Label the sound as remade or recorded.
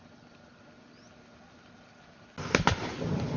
recorded